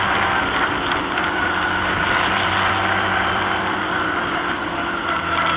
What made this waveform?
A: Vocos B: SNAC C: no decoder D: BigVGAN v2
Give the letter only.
D